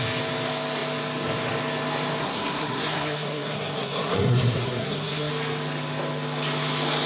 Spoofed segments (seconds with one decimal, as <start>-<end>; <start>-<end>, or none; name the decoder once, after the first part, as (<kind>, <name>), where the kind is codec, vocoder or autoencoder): 2.2-5.3 (codec, SNAC)